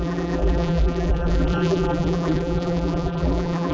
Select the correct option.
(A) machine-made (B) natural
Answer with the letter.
A